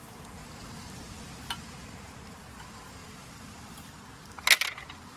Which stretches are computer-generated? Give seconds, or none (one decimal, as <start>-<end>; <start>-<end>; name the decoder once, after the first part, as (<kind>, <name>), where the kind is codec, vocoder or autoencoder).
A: 3.0-4.0 (vocoder, BigVGAN v2)